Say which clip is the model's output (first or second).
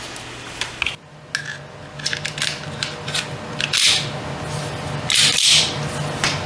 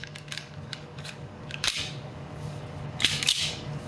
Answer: second